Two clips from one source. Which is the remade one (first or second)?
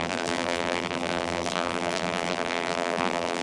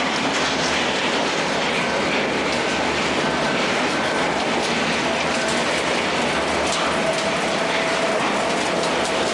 first